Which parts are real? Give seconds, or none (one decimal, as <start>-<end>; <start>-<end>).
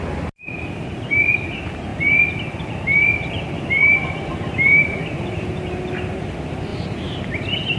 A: 1.9-3.3; 3.8-5.3; 6.7-7.8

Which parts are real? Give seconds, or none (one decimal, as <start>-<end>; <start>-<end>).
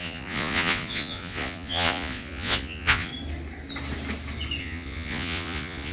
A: 3.1-4.6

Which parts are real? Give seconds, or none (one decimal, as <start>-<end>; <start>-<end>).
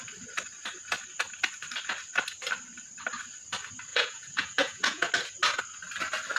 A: 0.0-3.9; 5.1-6.4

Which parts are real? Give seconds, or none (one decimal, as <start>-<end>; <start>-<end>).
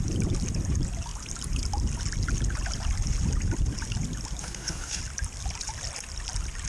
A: 0.0-4.4; 5.0-6.7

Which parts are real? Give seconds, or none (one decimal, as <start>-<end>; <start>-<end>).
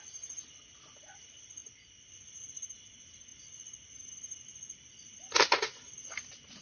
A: 0.0-6.6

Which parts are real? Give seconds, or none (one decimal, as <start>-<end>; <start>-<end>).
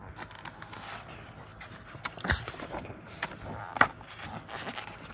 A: 0.0-1.5; 3.3-5.1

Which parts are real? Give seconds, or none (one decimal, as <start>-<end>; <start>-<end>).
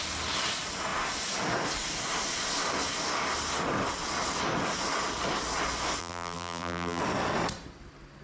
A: 0.0-6.0; 7.0-8.2